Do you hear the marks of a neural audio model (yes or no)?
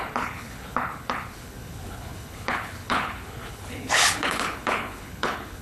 yes